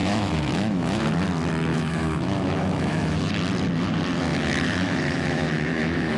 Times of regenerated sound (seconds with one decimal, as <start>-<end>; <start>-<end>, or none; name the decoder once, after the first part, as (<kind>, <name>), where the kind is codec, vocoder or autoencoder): 0.0-1.0 (autoencoder, DAC-VAE); 1.7-3.3; 4.3-6.2